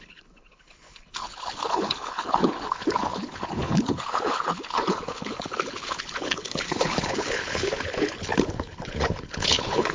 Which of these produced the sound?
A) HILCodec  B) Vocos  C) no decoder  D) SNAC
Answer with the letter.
A